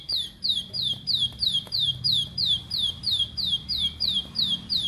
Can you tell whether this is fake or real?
fake